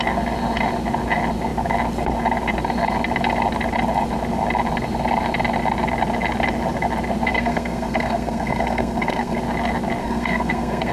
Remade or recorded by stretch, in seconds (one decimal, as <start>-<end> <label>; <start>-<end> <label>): 0.0-7.3 recorded; 7.3-9.4 remade; 9.4-10.0 recorded; 10.0-10.9 remade